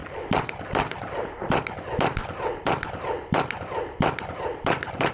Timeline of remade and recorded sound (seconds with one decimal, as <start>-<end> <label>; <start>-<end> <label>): 0.0-1.6 remade; 1.6-2.2 recorded; 2.2-5.1 remade